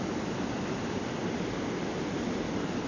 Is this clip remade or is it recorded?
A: recorded